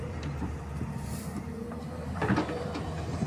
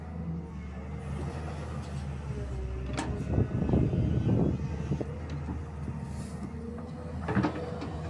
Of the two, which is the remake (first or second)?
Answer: first